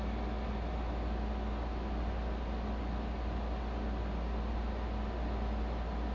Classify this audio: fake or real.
real